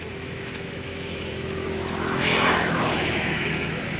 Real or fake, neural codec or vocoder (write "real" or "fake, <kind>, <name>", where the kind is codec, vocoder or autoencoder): fake, autoencoder, DAC-VAE